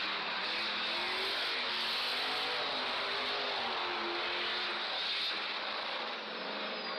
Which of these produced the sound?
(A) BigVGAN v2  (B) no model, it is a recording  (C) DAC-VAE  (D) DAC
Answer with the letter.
B